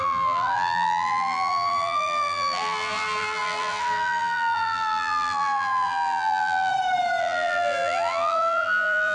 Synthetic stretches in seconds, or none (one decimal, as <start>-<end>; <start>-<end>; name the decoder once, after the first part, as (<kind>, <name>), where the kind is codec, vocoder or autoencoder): 0.0-6.7 (vocoder, BigVGAN v2); 7.2-9.1